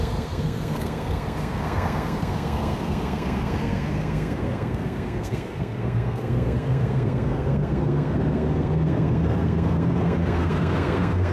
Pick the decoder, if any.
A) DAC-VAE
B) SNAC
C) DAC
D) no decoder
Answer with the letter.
B